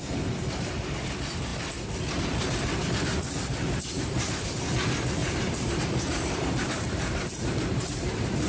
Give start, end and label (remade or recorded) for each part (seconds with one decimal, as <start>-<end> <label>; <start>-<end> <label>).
0.0-5.2 recorded; 5.2-8.5 remade